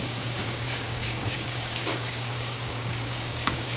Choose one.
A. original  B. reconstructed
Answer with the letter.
B